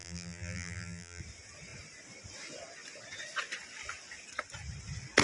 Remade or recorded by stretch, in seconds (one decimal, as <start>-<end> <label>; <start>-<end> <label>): 0.0-1.2 remade; 1.2-5.2 recorded